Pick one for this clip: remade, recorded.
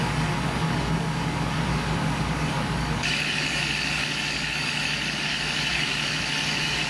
remade